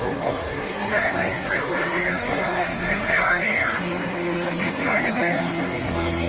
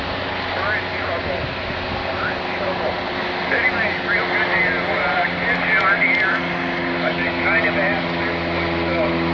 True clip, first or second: second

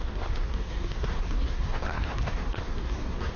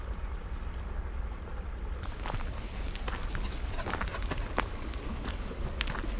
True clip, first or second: second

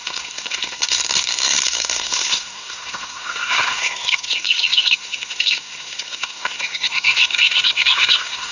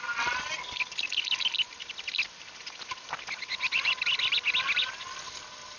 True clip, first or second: second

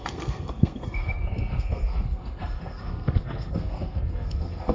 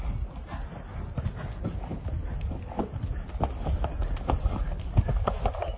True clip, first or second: second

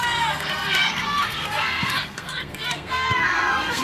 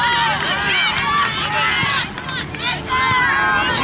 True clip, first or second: second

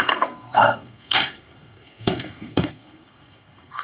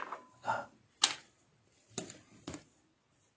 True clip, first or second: second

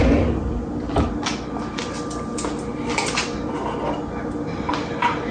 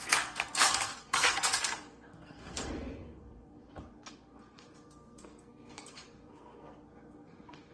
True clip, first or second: first